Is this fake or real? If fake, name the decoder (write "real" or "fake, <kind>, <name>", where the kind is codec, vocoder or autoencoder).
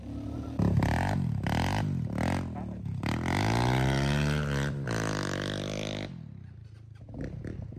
real